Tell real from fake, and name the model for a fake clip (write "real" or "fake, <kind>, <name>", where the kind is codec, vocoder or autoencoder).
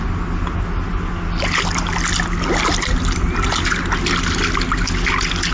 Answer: real